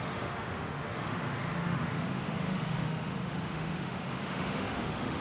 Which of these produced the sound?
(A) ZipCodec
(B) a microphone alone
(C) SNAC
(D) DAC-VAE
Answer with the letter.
D